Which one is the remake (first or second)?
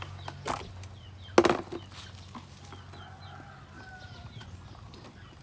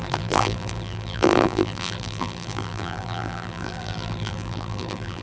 second